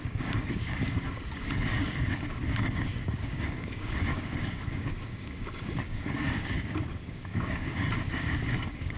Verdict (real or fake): fake